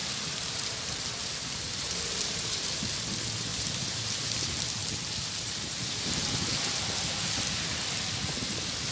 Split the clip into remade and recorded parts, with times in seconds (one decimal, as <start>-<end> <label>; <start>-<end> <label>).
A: 0.0-3.0 remade; 3.0-3.5 recorded; 3.5-6.6 remade; 6.6-8.9 recorded